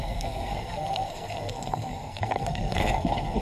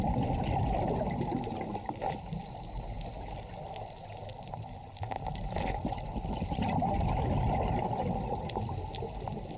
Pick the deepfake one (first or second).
first